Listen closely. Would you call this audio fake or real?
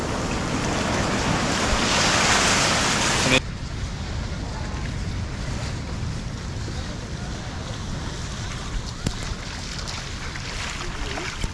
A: real